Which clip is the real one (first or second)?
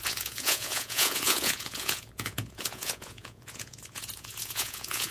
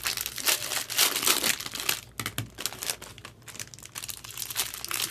second